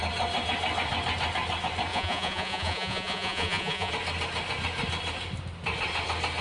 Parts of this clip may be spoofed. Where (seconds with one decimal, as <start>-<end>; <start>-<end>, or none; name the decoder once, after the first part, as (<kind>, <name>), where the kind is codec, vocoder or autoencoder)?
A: 1.9-3.9 (vocoder, Vocos)